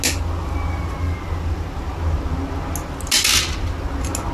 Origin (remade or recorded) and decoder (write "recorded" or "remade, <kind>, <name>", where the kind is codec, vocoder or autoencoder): recorded